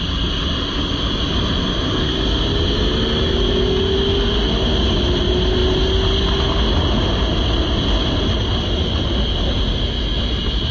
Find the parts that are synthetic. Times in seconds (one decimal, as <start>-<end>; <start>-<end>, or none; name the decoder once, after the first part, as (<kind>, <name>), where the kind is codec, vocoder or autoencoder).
none